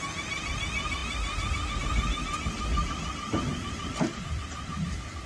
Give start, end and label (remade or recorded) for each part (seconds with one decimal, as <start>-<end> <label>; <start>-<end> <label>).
0.0-5.3 recorded